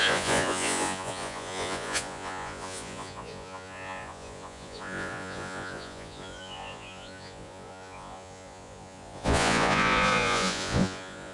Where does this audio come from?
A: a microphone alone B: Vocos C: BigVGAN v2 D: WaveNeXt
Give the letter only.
B